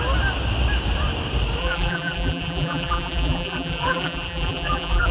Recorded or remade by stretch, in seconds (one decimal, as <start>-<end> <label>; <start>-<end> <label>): 0.0-1.6 recorded; 1.6-5.1 remade